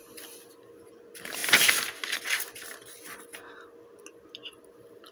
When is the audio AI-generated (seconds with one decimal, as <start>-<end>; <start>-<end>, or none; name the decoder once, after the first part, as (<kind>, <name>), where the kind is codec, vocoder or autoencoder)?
none